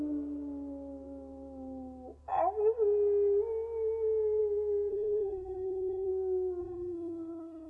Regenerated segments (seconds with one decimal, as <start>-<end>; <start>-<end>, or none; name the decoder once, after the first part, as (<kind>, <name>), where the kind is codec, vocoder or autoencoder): 4.9-6.1 (codec, SNAC); 6.6-7.7